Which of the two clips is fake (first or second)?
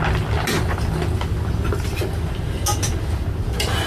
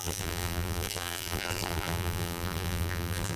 second